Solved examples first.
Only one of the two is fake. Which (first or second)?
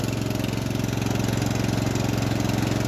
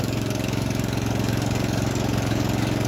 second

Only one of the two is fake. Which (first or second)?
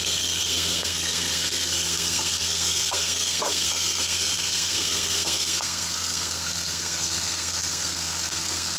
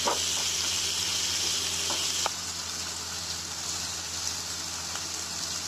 first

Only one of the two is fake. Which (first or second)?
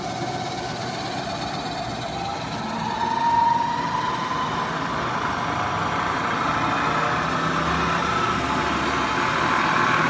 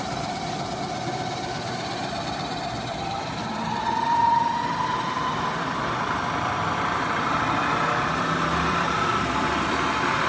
second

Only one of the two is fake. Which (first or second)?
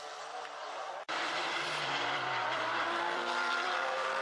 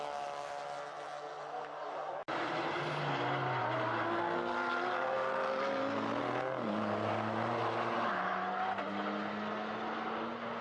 first